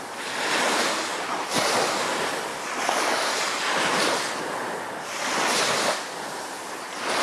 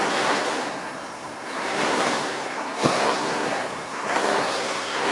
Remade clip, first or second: second